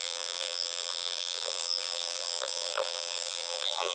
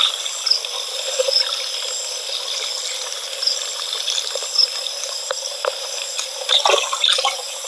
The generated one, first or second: first